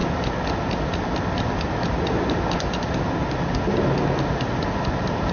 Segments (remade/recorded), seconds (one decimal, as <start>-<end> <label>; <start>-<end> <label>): 0.0-5.3 recorded